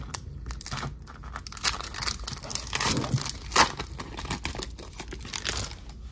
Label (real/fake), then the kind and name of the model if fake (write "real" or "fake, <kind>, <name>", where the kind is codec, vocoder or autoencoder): real